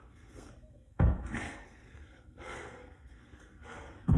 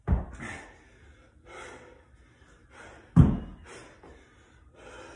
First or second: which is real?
second